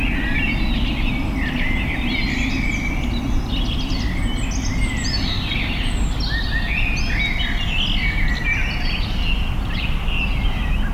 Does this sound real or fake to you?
real